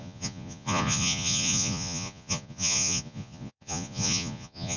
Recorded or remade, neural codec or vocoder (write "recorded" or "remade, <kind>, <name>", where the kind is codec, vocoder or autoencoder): remade, vocoder, Vocos